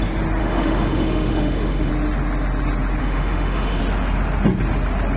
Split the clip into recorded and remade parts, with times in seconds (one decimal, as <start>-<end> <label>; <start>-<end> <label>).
0.0-0.4 recorded; 0.4-1.9 remade; 1.9-3.0 recorded; 3.0-3.8 remade; 3.8-5.2 recorded